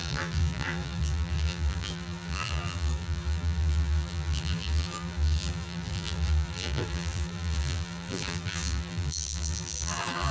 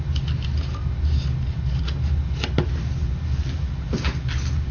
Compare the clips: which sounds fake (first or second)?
first